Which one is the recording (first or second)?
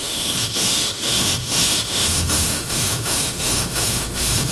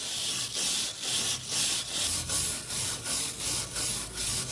second